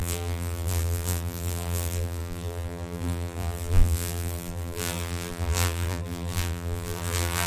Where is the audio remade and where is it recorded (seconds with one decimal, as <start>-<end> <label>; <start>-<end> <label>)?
0.0-7.5 remade